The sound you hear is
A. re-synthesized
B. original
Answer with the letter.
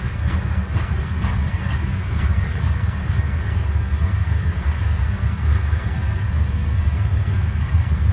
A